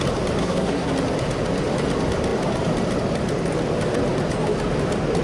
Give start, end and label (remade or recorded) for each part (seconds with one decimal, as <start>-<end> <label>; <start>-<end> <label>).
0.0-0.4 recorded; 0.4-0.9 remade; 0.9-5.2 recorded